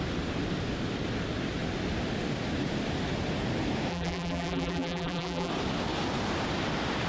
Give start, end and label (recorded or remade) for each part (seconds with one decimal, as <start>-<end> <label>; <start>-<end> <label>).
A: 0.0-3.9 recorded; 3.9-5.5 remade; 5.5-7.1 recorded